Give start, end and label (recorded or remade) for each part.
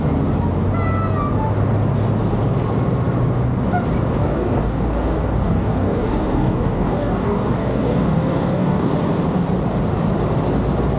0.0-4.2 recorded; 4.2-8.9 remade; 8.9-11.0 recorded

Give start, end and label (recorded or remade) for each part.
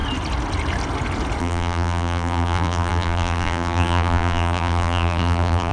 0.0-1.4 recorded; 1.4-5.7 remade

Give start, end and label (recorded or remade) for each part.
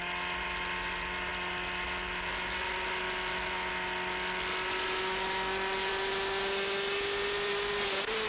0.0-8.3 recorded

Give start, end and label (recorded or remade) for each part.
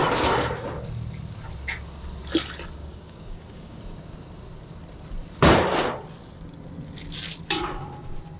0.0-2.8 recorded; 2.8-3.8 remade; 3.8-8.4 recorded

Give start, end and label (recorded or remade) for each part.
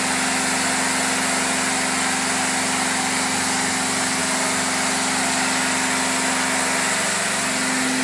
0.0-8.0 recorded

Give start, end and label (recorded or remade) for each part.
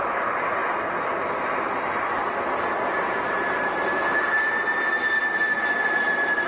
0.0-6.5 recorded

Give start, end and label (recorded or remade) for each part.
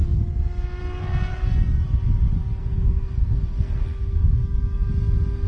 0.0-2.6 recorded; 2.6-4.9 remade; 4.9-5.5 recorded